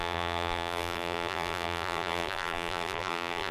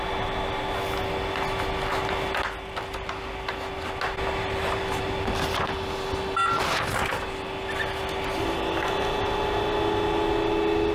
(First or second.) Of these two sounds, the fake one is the first